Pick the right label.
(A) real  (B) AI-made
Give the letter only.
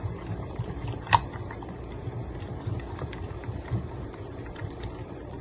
B